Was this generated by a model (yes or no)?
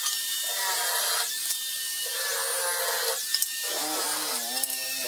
no